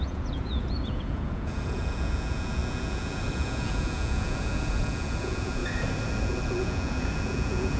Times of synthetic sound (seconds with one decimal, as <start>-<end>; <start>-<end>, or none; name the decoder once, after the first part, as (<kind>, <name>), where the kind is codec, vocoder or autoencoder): 0.0-5.6 (vocoder, Vocos); 6.6-7.8